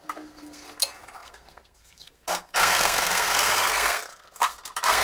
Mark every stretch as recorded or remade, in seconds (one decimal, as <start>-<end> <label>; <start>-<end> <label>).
0.0-5.0 remade

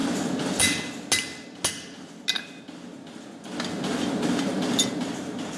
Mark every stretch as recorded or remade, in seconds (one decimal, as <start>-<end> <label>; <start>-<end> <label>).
0.0-5.6 recorded

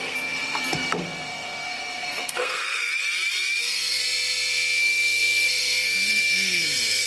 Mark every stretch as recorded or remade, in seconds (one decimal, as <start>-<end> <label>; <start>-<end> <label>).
0.0-2.9 remade; 2.9-3.6 recorded; 3.6-4.0 remade; 4.0-4.8 recorded; 4.8-7.1 remade

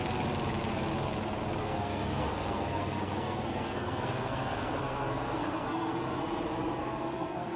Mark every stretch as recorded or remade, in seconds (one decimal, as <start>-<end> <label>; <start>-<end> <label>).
0.0-1.6 recorded; 1.6-6.2 remade; 6.2-6.8 recorded; 6.8-7.6 remade

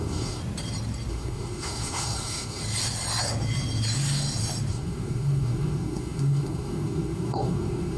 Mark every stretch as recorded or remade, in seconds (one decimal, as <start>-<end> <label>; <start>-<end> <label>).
0.0-0.4 remade; 0.4-1.1 recorded; 1.1-2.6 remade; 2.6-4.7 recorded; 4.7-8.0 remade